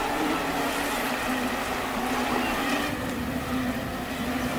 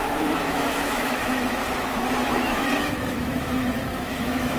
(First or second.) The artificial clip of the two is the second